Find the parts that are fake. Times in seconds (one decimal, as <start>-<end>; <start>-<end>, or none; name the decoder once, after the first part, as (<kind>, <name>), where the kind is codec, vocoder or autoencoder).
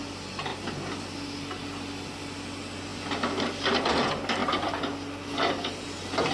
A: none